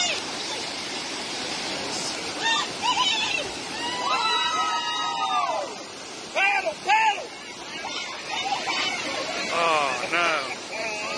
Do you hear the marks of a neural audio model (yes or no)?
no